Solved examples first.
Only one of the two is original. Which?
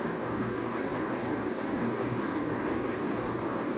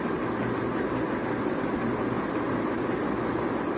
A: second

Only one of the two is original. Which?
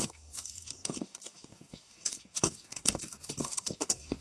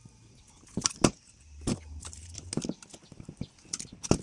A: second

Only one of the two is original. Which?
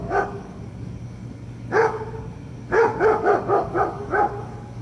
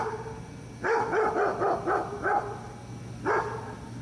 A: second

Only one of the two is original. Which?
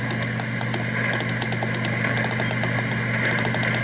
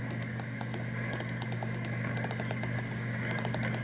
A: first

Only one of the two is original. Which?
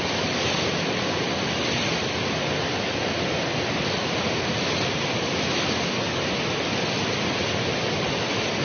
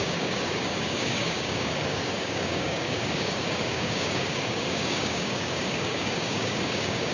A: first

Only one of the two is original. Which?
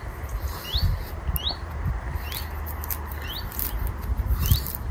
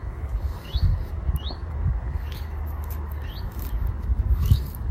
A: first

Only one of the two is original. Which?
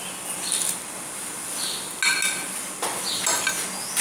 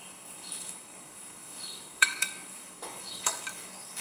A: first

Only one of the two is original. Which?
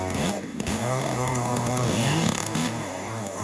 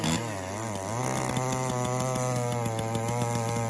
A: second